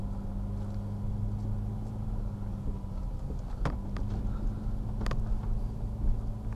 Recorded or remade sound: recorded